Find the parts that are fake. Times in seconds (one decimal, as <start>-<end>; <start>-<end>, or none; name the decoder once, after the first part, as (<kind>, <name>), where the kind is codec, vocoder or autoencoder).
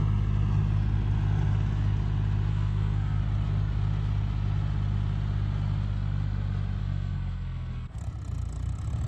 2.5-3.2 (codec, SNAC); 6.8-8.0